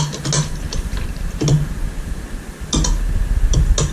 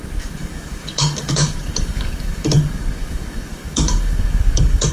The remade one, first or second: second